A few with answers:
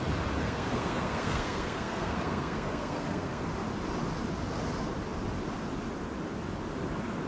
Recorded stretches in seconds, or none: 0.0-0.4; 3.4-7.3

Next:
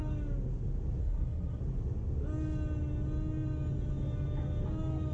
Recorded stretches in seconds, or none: 0.0-1.0; 1.6-5.1

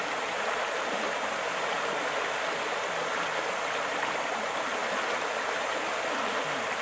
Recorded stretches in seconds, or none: 0.0-6.8